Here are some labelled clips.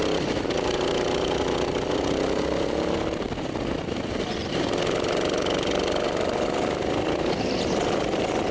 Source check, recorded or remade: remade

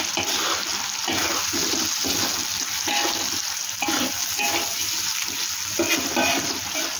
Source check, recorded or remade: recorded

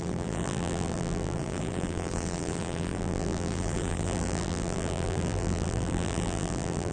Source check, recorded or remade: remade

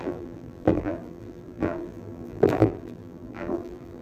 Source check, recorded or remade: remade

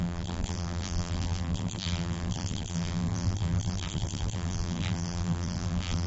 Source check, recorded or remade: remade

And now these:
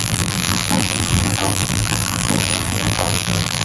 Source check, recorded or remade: remade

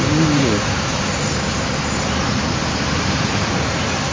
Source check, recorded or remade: remade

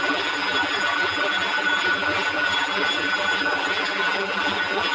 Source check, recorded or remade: remade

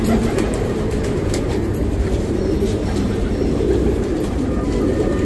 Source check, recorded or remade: remade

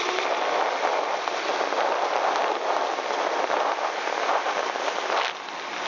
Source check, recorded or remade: recorded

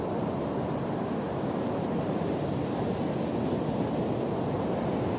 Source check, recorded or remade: recorded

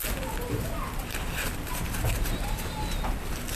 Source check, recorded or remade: recorded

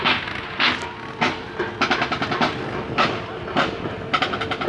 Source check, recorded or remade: recorded